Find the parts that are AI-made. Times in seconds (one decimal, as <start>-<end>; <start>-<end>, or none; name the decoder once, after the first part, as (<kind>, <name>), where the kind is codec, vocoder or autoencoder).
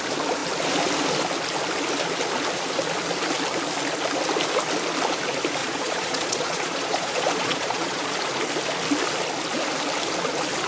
5.6-8.1 (vocoder, Vocos)